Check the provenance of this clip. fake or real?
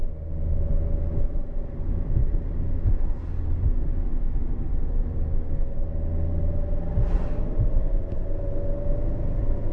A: real